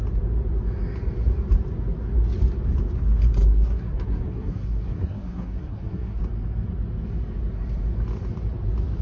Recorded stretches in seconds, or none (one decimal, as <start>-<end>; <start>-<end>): 0.0-3.4; 6.2-9.0

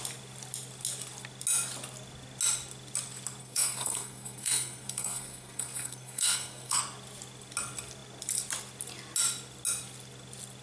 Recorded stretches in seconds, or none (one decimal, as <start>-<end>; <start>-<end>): 0.0-3.4; 6.8-10.6

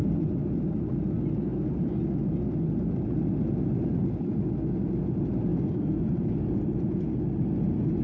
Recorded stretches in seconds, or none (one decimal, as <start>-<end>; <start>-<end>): 0.9-1.5; 2.0-5.5; 6.3-8.0